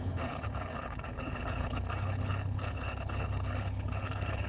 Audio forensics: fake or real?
fake